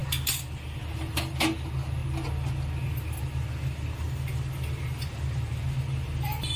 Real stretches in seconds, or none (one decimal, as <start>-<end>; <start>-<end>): 0.0-6.6